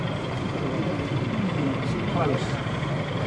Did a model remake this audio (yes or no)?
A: yes